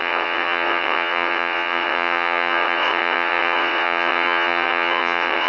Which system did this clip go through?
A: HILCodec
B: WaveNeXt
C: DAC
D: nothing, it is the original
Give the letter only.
B